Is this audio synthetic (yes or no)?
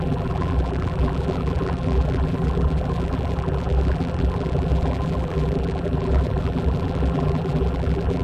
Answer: yes